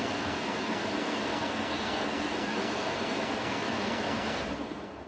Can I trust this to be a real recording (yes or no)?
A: no